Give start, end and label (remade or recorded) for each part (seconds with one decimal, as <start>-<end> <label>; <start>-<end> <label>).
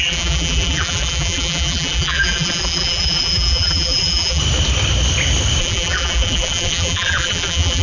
0.0-4.4 remade; 4.4-5.6 recorded; 5.6-7.8 remade